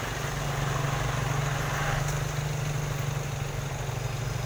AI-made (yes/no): no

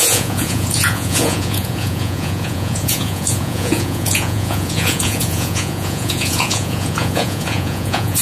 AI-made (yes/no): yes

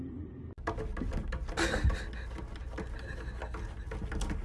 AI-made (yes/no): no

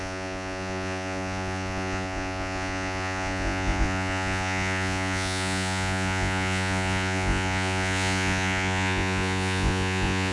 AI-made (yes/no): yes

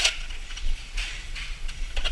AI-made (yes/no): yes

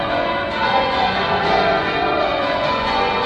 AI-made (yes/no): yes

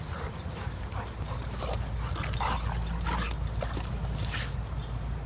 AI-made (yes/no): no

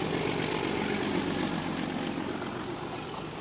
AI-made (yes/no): no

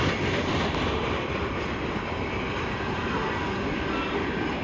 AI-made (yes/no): no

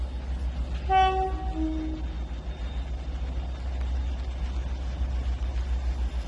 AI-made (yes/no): no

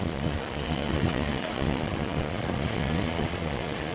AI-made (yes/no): yes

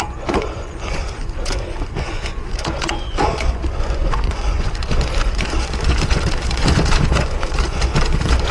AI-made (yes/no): yes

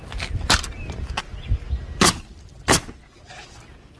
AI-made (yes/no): no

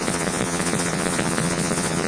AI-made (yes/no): yes